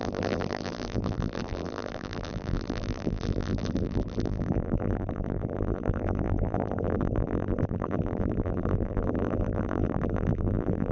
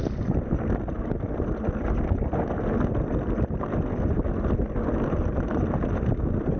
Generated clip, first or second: first